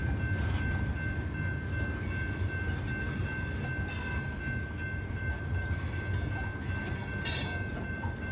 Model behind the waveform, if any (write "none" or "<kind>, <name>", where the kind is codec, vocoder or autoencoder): none